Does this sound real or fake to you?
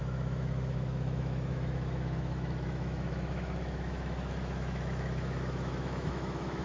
fake